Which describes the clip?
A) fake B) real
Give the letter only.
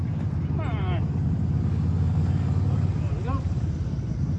A